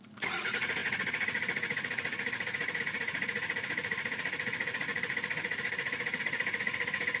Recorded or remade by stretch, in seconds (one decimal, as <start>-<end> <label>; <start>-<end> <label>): 0.0-7.2 remade